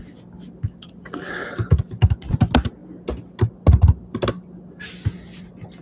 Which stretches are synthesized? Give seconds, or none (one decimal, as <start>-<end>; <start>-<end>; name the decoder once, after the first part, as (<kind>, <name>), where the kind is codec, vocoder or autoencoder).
none